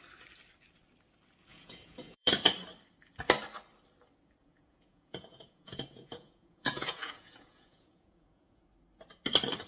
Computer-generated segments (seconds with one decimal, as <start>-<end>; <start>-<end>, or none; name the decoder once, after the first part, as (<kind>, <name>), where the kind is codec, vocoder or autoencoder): 1.5-2.3 (vocoder, Vocos); 4.4-8.6